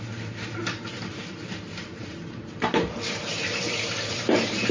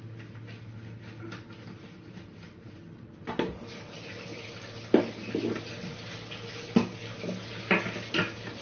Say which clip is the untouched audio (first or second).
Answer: second